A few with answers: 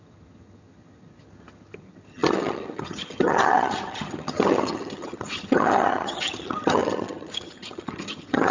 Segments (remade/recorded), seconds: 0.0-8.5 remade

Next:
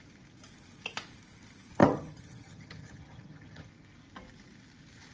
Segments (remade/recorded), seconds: 0.0-1.8 recorded; 1.8-3.7 remade; 3.7-5.1 recorded

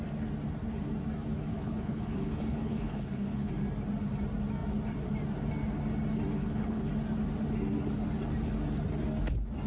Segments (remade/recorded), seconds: 0.0-1.5 recorded; 1.5-3.5 remade; 3.5-6.3 recorded; 6.3-6.9 remade; 6.9-9.7 recorded

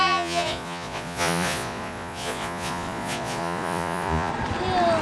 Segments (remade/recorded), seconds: 0.0-4.3 remade; 4.3-5.0 recorded